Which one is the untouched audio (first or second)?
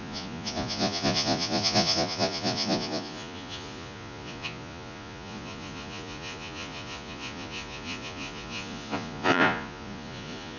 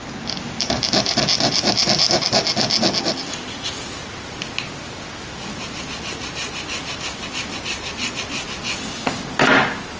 second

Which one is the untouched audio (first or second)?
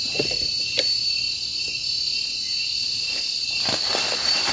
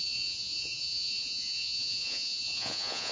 first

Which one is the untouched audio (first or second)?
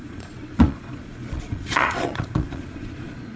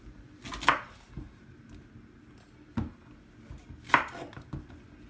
second